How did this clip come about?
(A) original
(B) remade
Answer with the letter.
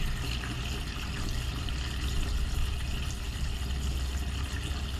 A